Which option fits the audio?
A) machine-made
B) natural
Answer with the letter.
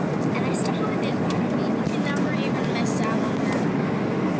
B